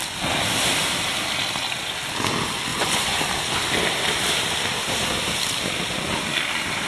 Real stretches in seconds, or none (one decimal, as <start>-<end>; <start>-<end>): 0.0-2.7; 3.2-6.9